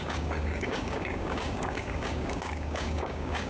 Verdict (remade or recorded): remade